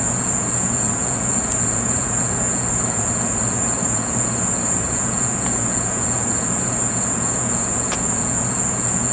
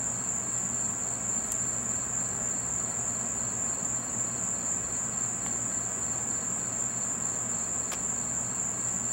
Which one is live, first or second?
second